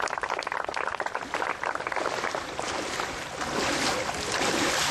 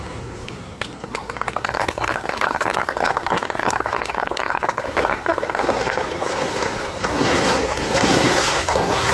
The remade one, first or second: second